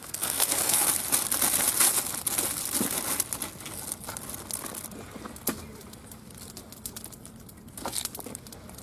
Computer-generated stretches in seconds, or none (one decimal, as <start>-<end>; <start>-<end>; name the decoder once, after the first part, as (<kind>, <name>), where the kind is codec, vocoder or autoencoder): 0.0-0.9 (codec, SNAC)